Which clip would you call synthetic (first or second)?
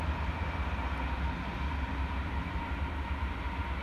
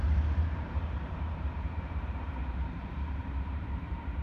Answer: second